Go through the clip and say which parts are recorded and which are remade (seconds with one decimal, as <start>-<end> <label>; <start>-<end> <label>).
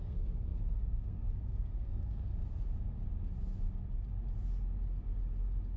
0.0-2.3 remade; 2.3-5.8 recorded